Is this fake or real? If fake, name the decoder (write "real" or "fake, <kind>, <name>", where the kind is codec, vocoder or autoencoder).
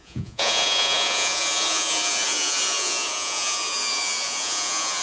fake, vocoder, Vocos